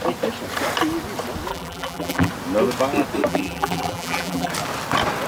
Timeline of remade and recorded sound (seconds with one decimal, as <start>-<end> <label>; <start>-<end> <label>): 0.0-1.5 recorded; 1.5-2.3 remade; 2.3-3.3 recorded; 3.3-4.5 remade; 4.5-5.3 recorded